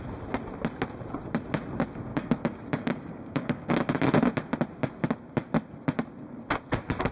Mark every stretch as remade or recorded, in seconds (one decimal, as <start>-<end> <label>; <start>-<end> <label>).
0.0-2.1 recorded; 2.1-3.7 remade; 3.7-7.1 recorded

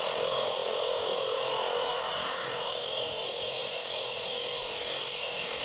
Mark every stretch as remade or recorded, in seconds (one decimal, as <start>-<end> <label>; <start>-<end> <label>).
0.0-5.6 remade

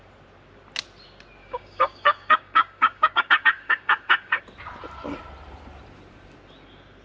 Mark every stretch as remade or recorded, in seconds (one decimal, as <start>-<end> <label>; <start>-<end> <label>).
0.0-1.4 recorded; 1.4-4.4 remade; 4.4-7.0 recorded

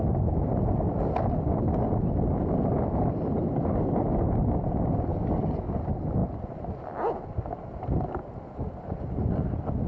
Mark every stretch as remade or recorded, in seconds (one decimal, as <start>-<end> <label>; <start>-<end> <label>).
0.0-5.1 recorded; 5.1-5.8 remade; 5.8-9.9 recorded